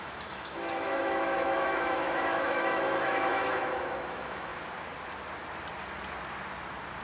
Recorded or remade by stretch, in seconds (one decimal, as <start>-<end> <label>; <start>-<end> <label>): 0.0-4.5 remade; 4.5-7.0 recorded